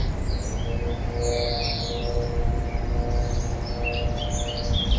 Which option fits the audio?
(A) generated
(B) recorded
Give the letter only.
B